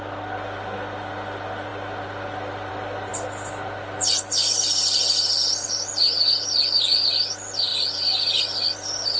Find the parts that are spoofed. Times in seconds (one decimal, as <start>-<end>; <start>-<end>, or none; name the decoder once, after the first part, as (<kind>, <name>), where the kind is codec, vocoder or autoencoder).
none